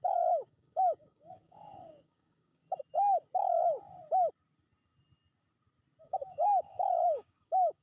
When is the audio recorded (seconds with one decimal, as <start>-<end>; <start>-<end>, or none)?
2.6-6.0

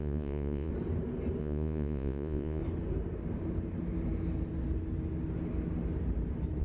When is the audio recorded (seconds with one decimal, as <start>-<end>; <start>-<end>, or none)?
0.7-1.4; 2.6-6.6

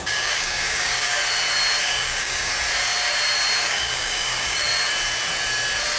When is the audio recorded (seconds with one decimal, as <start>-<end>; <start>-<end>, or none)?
1.2-1.8; 2.5-3.6; 4.7-6.0